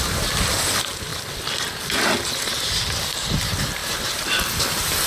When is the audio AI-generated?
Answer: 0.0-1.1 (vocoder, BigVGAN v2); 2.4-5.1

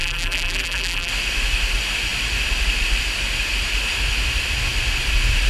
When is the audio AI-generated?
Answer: 0.0-1.1 (vocoder, BigVGAN v2)

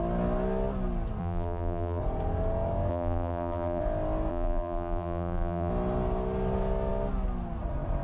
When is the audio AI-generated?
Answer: 1.2-2.0 (vocoder, BigVGAN v2); 2.9-3.8; 4.3-5.7

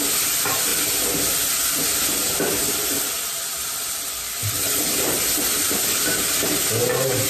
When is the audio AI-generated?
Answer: 4.4-4.9 (vocoder, BigVGAN v2)

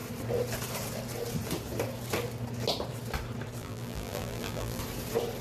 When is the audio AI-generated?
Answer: 3.6-4.8 (vocoder, BigVGAN v2)